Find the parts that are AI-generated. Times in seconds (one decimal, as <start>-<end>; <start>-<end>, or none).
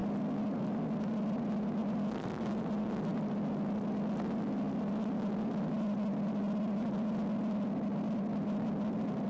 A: none